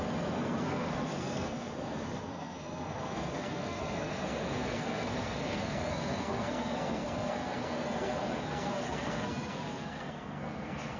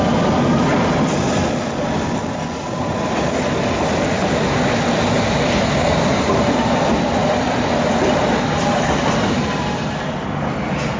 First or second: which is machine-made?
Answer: first